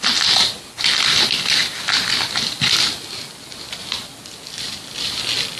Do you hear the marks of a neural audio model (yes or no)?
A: no